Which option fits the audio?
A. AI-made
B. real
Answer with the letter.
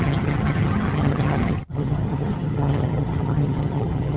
A